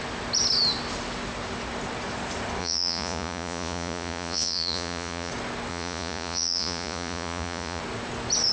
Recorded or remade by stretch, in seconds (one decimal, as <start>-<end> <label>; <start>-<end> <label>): 0.0-2.6 recorded; 2.6-5.3 remade; 5.3-5.7 recorded; 5.7-7.8 remade; 7.8-8.5 recorded